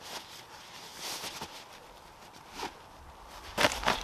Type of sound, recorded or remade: recorded